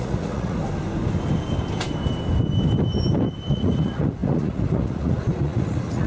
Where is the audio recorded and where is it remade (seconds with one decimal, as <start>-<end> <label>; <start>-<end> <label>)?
0.0-0.6 remade; 0.6-3.5 recorded; 3.5-6.1 remade